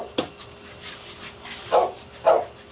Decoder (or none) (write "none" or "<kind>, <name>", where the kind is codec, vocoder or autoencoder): none